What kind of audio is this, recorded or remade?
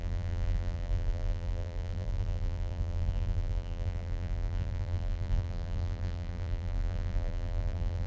remade